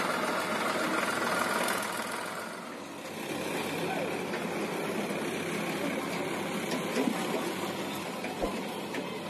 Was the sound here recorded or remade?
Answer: recorded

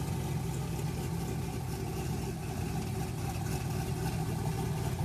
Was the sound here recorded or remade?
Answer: recorded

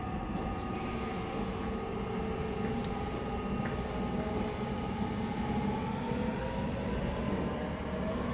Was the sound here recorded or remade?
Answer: recorded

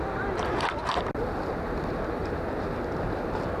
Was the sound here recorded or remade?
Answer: recorded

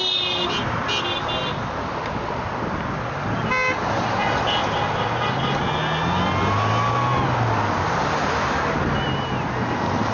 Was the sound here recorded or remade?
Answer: recorded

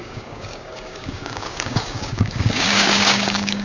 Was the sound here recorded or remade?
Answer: remade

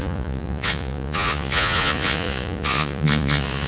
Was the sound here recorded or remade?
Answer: remade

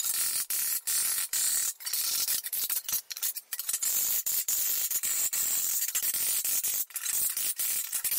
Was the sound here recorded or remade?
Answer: remade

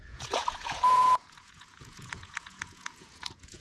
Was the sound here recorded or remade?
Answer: remade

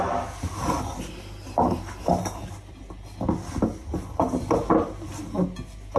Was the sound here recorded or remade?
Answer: recorded